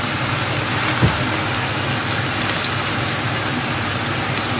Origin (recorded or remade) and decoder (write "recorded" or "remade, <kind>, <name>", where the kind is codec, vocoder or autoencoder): recorded